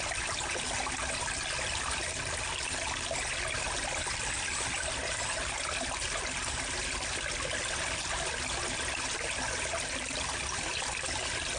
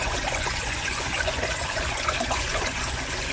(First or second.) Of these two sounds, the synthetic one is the second